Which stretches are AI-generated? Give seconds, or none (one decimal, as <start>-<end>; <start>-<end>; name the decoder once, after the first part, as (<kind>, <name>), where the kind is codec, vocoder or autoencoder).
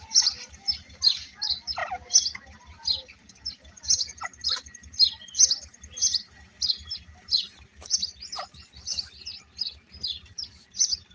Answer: 0.0-1.8 (vocoder, BigVGAN v2); 2.4-4.1; 6.7-11.1